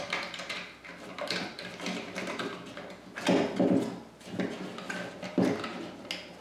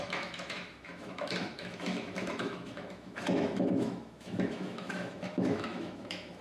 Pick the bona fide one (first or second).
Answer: first